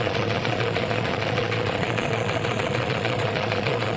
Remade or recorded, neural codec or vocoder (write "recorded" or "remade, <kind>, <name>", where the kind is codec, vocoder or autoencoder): remade, vocoder, Vocos